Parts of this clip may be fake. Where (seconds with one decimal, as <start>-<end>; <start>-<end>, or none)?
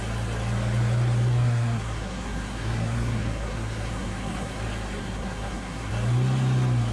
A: 1.3-4.6; 5.0-5.9